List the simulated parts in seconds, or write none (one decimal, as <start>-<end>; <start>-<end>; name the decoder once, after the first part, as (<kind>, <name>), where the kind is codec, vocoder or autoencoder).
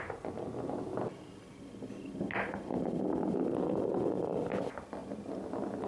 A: none